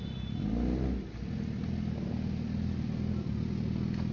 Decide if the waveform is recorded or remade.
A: recorded